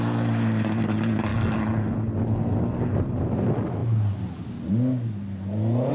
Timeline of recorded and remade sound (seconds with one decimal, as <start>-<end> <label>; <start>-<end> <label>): 0.0-5.9 recorded